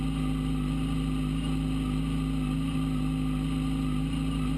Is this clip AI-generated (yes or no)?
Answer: no